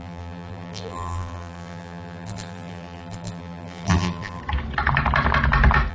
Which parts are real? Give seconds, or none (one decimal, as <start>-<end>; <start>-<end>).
4.4-5.9